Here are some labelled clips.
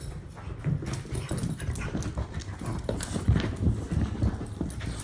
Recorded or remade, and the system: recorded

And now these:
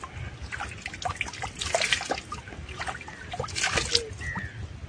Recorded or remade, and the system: recorded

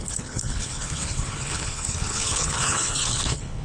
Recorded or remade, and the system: remade, codec, HILCodec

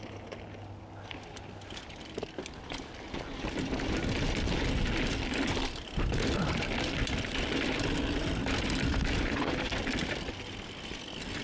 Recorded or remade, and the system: recorded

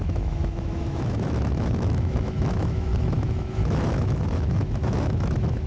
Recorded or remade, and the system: remade, autoencoder, DAC-VAE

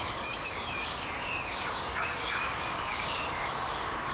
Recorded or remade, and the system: remade, codec, DAC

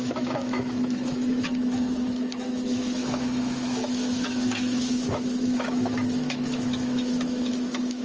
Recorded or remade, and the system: remade, autoencoder, DAC-VAE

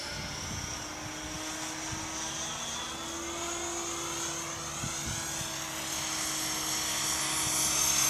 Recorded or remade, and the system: recorded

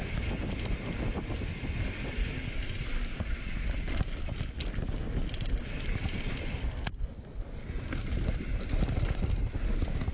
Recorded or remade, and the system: recorded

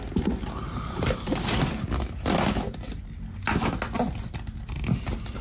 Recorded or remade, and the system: recorded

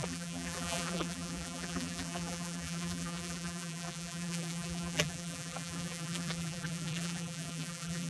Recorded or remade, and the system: remade, vocoder, BigVGAN v2